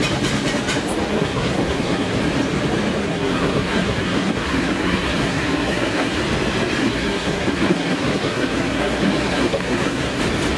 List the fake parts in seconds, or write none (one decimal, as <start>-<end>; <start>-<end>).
1.1-2.2; 3.0-6.2; 6.8-10.2